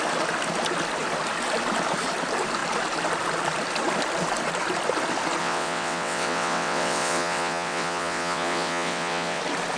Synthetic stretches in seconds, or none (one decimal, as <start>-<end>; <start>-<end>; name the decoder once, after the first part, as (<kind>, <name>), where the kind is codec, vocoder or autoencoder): 5.4-9.4 (vocoder, WaveNeXt)

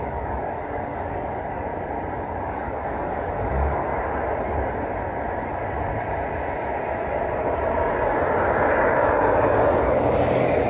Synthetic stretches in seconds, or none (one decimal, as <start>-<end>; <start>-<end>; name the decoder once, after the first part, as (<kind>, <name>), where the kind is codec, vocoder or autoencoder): 0.0-1.7 (codec, DAC); 2.4-3.9; 8.7-10.7

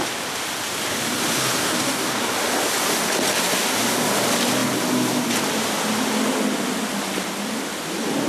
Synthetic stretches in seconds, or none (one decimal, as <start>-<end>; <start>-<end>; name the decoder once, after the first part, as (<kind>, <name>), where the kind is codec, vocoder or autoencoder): 1.6-2.2 (codec, DAC)

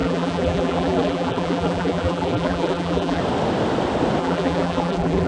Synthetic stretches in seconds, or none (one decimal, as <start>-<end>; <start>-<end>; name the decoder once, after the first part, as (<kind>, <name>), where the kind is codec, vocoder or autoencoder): 0.0-3.2 (vocoder, BigVGAN v2); 4.2-5.3